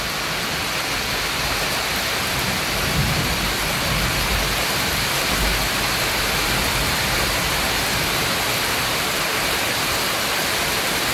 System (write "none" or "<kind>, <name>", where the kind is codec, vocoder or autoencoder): none